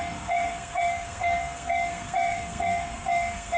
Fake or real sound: fake